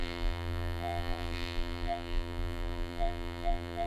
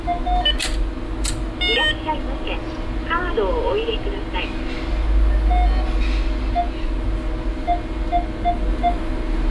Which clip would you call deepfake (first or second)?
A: first